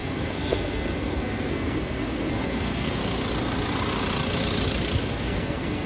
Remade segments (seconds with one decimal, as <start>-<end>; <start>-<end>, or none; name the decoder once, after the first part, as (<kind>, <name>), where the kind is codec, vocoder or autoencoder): 0.0-3.0 (codec, SNAC); 5.0-5.9